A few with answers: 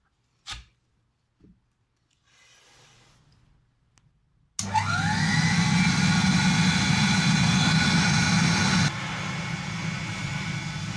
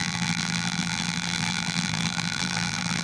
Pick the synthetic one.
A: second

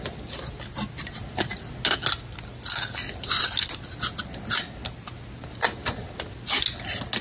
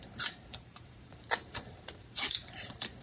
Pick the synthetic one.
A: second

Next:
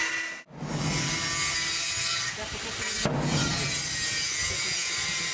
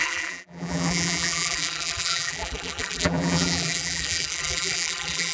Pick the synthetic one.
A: second